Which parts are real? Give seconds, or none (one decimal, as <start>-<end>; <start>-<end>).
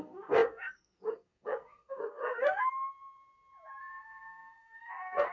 2.9-3.8